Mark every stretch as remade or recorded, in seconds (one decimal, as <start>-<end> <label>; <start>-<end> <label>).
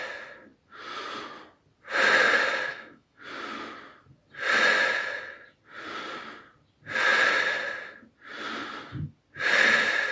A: 0.0-2.7 recorded; 2.7-3.2 remade; 3.2-10.1 recorded